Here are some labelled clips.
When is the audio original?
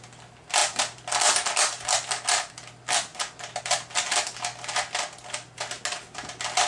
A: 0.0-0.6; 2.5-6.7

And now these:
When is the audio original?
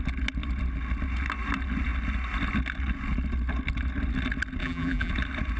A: 0.0-4.6; 5.1-5.6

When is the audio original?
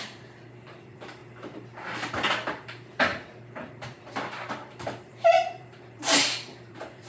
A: 1.2-2.3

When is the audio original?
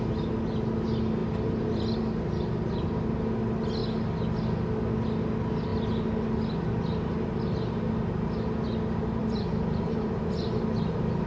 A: 0.0-1.2; 2.0-9.2; 10.6-11.3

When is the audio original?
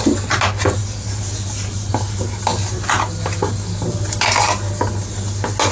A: 0.0-0.8; 1.9-5.7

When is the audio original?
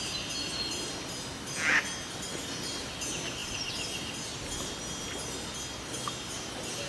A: 0.0-2.3; 2.9-6.9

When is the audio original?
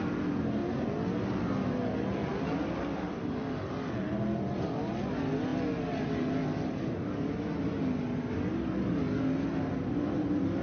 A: 0.0-2.3; 3.5-10.6